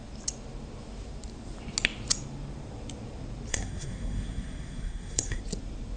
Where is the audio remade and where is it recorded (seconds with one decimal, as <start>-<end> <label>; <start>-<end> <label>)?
0.0-3.5 recorded; 3.5-5.4 remade; 5.4-6.0 recorded